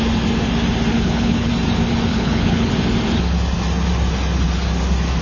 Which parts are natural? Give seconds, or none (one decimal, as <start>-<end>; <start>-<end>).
0.0-0.9; 1.5-2.1; 2.7-5.2